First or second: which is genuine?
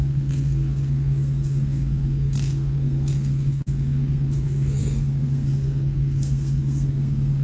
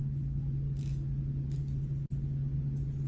second